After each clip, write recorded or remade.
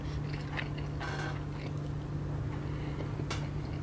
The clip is recorded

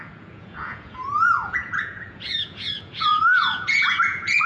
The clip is remade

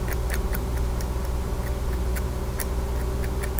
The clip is recorded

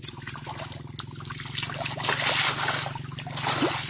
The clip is recorded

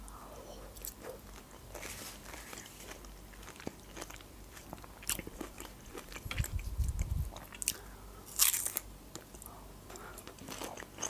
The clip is recorded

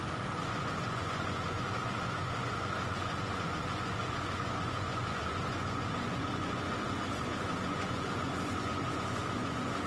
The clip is remade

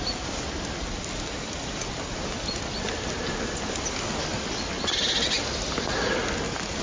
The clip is recorded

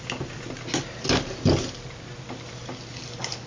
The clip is recorded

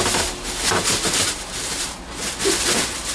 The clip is recorded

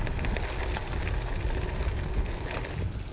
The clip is recorded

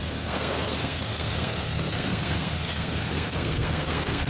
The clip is remade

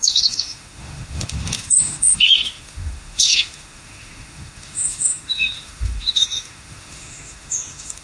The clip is remade